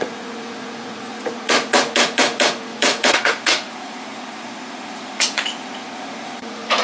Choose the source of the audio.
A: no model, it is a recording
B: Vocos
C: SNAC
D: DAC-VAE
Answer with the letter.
B